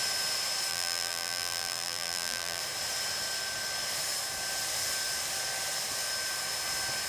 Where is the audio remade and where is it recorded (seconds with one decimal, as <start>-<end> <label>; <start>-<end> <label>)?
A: 0.0-0.7 recorded; 0.7-2.6 remade; 2.6-7.1 recorded